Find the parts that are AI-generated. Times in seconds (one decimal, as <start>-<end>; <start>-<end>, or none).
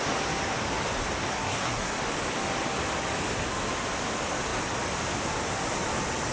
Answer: 1.3-2.0